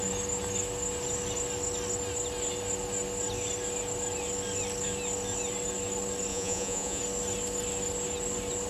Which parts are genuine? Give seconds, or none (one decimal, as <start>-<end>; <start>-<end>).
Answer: 0.0-6.3; 7.0-8.7